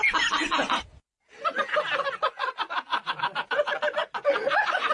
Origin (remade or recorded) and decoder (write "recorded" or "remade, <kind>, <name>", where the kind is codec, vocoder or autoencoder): recorded